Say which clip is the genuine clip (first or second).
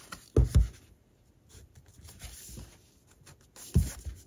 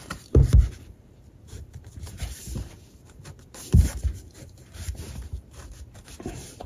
first